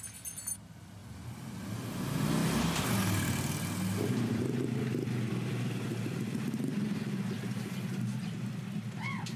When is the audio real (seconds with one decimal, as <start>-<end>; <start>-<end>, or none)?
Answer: 0.0-9.4